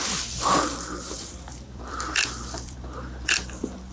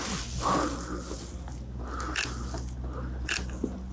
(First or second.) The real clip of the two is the second